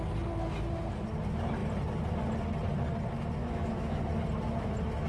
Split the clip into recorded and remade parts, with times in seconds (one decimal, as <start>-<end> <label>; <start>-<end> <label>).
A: 0.0-3.4 recorded; 3.4-4.0 remade; 4.0-5.1 recorded

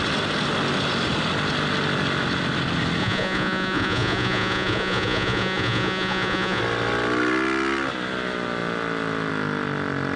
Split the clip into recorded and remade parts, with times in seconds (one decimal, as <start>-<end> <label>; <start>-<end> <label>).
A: 0.0-3.0 recorded; 3.0-6.6 remade; 6.6-10.2 recorded

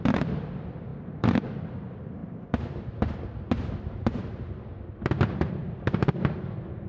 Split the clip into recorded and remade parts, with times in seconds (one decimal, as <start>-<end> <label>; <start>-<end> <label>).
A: 0.0-6.9 remade

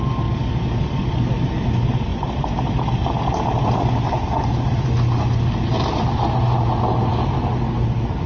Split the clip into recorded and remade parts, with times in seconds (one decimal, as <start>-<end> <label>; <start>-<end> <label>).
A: 0.0-8.3 recorded

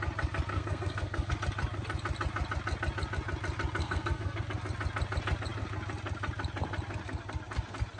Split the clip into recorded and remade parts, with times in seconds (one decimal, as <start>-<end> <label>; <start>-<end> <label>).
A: 0.0-0.5 recorded; 0.5-1.3 remade; 1.3-3.8 recorded; 3.8-4.4 remade; 4.4-8.0 recorded

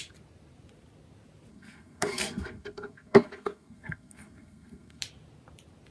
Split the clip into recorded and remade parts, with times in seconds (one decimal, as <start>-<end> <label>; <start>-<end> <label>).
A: 0.0-1.5 recorded; 1.5-5.0 remade; 5.0-5.9 recorded

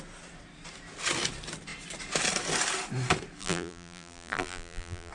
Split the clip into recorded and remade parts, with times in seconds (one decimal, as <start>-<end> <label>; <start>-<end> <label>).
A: 0.0-3.4 recorded; 3.4-5.1 remade

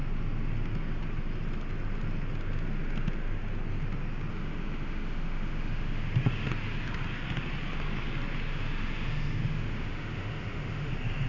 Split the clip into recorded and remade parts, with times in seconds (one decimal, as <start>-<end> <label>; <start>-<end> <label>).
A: 0.0-4.3 recorded; 4.3-6.5 remade; 6.5-8.5 recorded; 8.5-10.9 remade; 10.9-11.3 recorded